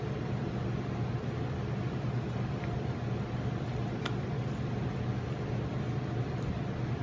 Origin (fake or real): real